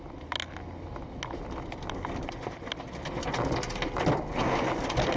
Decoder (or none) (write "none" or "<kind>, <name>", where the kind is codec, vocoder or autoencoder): none